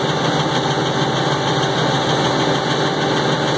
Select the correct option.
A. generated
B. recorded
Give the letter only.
B